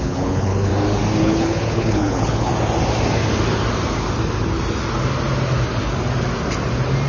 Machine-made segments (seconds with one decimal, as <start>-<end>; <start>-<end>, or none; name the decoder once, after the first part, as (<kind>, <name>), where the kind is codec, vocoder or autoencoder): 0.0-0.7 (codec, HILCodec); 1.2-2.5